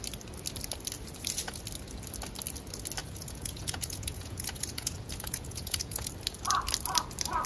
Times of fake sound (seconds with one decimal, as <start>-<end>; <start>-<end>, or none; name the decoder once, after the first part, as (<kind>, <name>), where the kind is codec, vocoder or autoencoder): 3.0-6.1 (vocoder, Vocos)